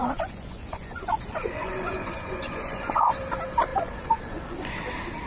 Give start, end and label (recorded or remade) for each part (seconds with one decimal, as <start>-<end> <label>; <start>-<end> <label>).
0.0-3.2 remade; 3.2-3.7 recorded; 3.7-4.7 remade; 4.7-5.3 recorded